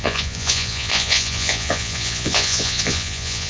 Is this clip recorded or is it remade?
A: remade